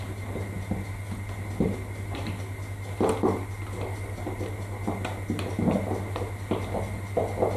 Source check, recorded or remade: recorded